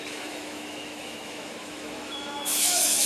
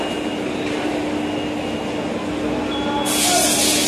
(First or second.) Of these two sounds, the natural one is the second